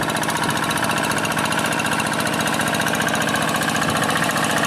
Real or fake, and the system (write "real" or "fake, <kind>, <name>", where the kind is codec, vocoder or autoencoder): real